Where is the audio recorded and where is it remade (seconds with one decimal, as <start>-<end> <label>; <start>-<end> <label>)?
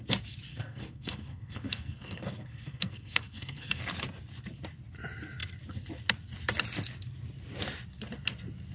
0.0-0.5 recorded; 0.5-3.8 remade; 3.8-8.7 recorded